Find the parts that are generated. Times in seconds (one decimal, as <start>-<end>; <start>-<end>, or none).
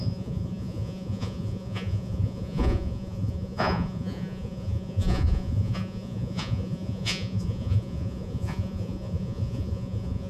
0.0-10.3